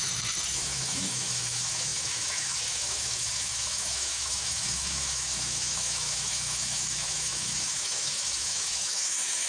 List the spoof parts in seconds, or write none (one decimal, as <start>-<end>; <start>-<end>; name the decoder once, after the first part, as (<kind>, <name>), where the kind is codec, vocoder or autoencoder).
0.0-9.5 (autoencoder, DAC-VAE)